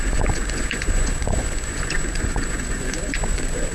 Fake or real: fake